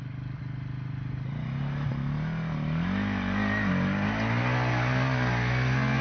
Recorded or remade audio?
recorded